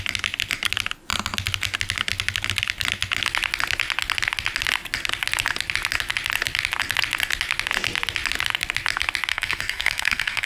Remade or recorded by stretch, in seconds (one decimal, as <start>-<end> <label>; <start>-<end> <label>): 0.0-9.3 recorded; 9.3-10.5 remade